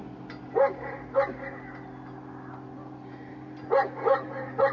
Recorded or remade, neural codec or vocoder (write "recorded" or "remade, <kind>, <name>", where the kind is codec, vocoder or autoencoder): recorded